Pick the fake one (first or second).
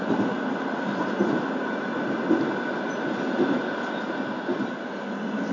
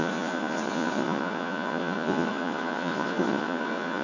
second